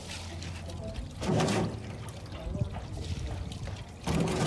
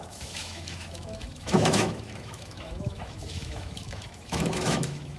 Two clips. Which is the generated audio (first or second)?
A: second